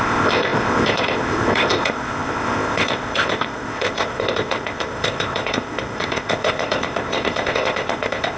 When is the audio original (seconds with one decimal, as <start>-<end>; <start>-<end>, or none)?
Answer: none